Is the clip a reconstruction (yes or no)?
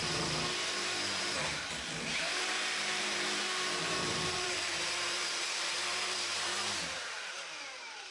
yes